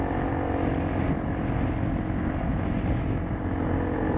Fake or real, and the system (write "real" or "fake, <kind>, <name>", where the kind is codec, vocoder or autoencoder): real